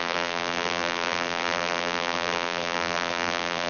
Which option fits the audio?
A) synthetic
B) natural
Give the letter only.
A